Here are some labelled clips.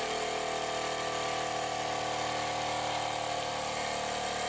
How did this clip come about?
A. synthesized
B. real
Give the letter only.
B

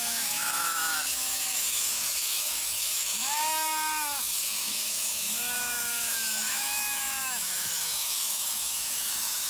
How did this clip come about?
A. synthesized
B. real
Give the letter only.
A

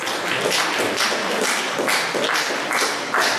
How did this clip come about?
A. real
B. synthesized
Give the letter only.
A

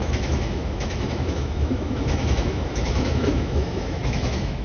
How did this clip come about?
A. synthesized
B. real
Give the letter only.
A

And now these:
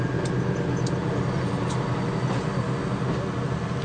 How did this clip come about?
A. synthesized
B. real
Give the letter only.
B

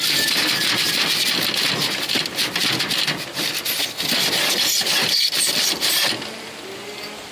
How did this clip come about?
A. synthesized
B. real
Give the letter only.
B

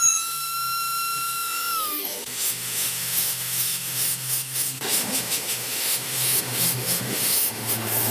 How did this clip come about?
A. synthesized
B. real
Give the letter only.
A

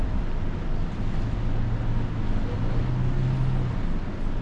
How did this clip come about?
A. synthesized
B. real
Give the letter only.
B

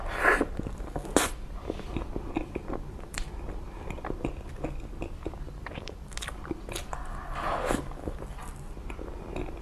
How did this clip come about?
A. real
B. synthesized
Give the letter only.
A